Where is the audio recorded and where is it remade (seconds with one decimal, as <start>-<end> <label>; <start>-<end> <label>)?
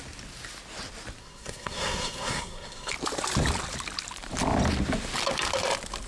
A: 0.0-1.2 recorded; 1.2-2.9 remade; 2.9-6.1 recorded